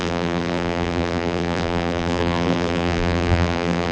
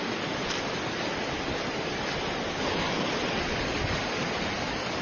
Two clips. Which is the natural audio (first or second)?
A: second